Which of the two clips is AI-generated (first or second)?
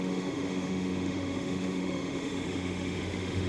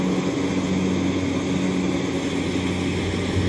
first